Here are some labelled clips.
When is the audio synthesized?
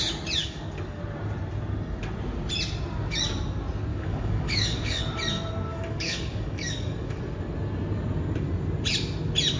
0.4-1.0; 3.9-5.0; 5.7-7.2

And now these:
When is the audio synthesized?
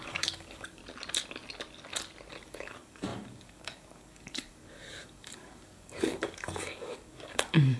0.0-0.8; 2.3-7.8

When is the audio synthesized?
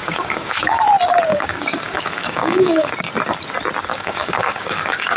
0.0-0.8; 1.3-2.9; 3.9-5.2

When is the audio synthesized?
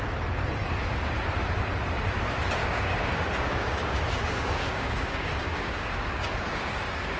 2.6-7.2